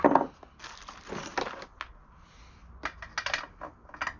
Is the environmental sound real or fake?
real